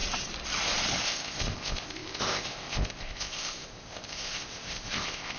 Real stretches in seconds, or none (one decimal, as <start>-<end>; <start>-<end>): 0.0-1.0